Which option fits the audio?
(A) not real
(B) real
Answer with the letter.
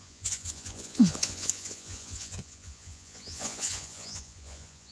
A